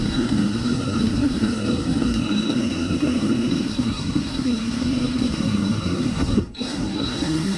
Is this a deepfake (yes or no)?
yes